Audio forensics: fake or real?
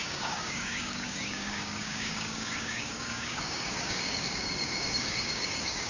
fake